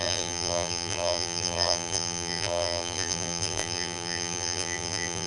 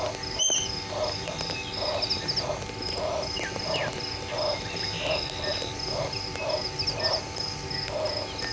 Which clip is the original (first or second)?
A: second